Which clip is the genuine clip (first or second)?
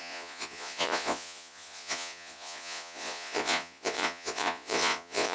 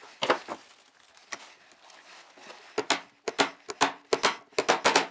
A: second